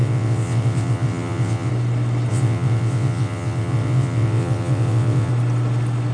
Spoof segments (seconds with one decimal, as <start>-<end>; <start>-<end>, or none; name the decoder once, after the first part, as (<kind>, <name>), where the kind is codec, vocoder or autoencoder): 0.0-1.7 (vocoder, WaveNeXt); 2.3-5.3

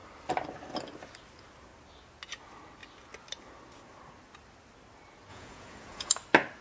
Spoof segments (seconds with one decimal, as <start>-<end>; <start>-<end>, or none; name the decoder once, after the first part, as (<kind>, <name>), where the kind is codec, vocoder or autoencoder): 5.3-6.1 (vocoder, Vocos)

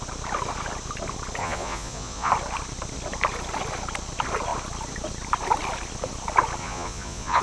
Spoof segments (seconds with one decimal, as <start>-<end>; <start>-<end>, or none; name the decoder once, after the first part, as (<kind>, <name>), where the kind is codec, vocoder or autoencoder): 1.4-2.3 (vocoder, Vocos); 6.6-7.4